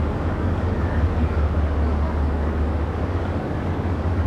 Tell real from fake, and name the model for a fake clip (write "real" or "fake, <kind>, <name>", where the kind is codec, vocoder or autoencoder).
fake, codec, DAC